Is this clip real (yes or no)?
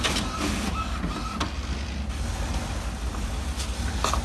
yes